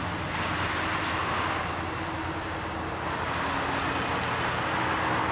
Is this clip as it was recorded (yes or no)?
yes